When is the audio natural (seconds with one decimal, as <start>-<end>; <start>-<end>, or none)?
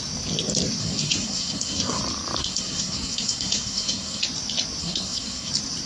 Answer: 0.0-0.8; 2.0-2.4; 4.2-4.8; 5.5-5.9